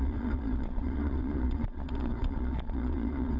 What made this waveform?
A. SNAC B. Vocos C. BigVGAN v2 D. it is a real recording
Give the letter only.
B